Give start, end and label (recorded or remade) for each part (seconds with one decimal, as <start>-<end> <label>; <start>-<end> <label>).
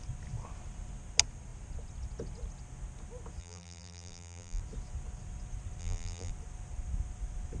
0.0-3.4 recorded; 3.4-4.6 remade; 4.6-5.8 recorded; 5.8-6.3 remade; 6.3-7.6 recorded